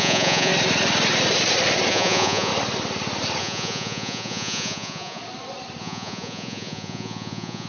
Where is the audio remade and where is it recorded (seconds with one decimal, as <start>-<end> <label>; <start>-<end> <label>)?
0.0-0.5 remade; 0.5-1.9 recorded; 1.9-2.5 remade; 2.5-3.4 recorded; 3.4-5.2 remade; 5.2-5.8 recorded; 5.8-7.7 remade